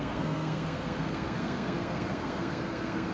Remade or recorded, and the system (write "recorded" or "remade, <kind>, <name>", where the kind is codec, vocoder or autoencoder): remade, codec, SNAC